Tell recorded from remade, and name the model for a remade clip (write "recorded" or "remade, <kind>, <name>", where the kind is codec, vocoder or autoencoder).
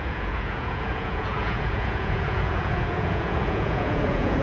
remade, vocoder, Vocos